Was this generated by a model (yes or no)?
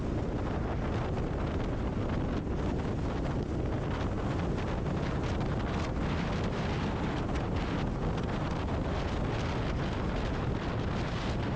no